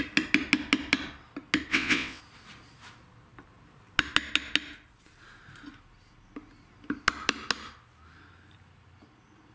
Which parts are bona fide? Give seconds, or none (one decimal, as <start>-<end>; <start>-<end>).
0.0-1.7; 2.2-9.5